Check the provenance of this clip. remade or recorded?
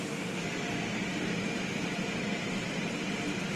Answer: recorded